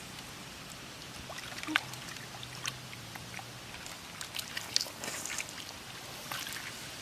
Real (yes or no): yes